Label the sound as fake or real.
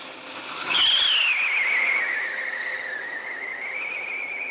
real